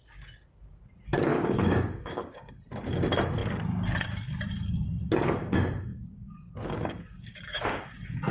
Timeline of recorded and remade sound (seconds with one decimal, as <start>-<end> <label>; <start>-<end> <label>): 0.0-1.3 recorded; 1.3-2.5 remade; 2.5-5.9 recorded; 5.9-7.8 remade; 7.8-8.3 recorded